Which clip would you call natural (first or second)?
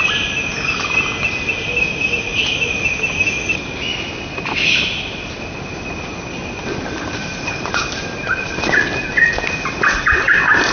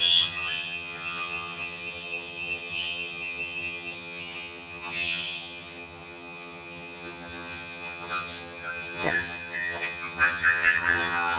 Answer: first